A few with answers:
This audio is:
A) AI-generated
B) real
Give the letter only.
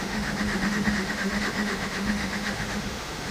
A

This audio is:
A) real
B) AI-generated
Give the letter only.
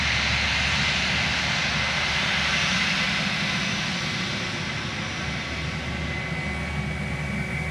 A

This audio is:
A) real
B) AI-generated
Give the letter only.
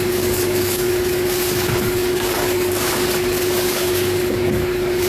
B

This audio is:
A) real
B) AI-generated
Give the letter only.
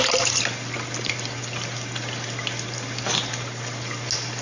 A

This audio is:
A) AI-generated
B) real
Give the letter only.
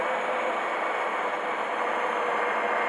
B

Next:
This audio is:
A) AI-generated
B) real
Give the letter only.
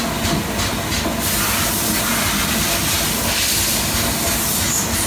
B